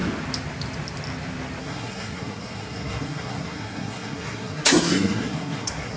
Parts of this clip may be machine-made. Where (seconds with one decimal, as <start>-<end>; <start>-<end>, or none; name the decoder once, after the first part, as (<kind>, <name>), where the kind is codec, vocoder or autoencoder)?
1.6-6.0 (codec, SNAC)